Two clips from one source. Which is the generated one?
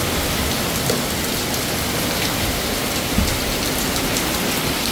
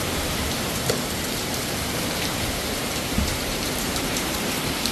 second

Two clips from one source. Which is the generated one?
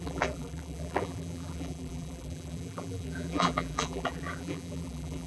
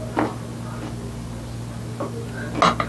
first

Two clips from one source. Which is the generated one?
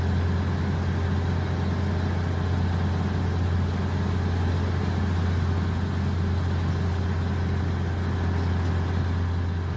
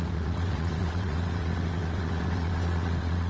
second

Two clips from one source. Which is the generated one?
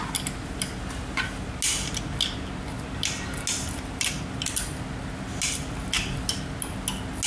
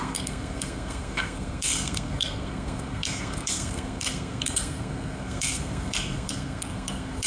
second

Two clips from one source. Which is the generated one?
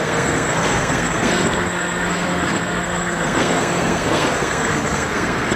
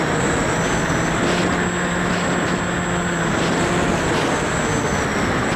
first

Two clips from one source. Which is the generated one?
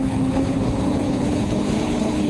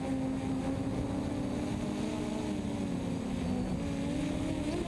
first